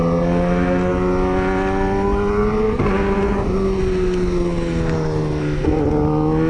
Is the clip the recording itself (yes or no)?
yes